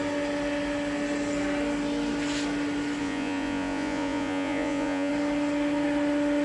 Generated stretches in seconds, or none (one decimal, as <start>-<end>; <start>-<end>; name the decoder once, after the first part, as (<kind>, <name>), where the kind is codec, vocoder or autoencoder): 3.0-5.1 (vocoder, Vocos)